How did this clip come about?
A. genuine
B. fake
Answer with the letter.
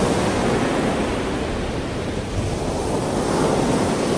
A